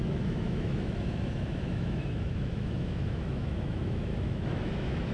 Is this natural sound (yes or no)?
no